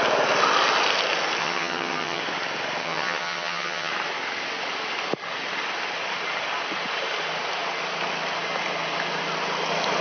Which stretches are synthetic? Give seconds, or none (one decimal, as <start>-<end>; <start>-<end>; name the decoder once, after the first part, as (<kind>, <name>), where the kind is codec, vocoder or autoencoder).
1.4-2.2 (vocoder, HiFi-GAN); 2.8-3.9